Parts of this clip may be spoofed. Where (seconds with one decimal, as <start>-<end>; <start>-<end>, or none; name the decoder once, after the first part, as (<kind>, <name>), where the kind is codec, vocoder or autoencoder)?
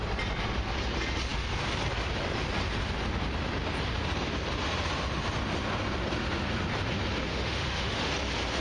7.3-8.1 (autoencoder, DAC-VAE)